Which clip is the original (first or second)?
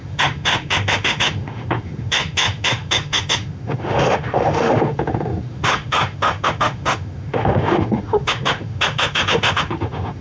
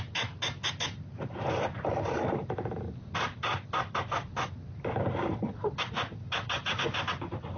second